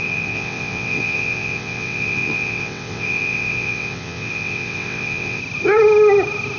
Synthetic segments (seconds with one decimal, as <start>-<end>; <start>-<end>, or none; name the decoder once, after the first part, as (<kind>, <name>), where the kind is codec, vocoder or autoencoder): 0.0-5.4 (vocoder, WaveNeXt)